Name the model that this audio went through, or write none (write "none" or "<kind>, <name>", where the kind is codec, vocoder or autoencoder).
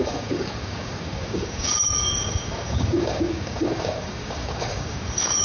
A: codec, DAC